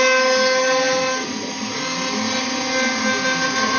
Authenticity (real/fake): real